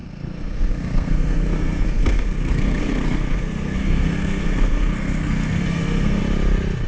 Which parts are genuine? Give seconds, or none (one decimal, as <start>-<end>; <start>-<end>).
6.2-6.9